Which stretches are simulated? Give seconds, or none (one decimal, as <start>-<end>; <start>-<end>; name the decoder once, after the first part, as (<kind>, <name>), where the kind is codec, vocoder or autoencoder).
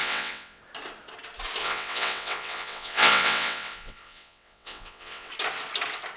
0.0-0.6 (vocoder, WaveNeXt); 1.6-5.3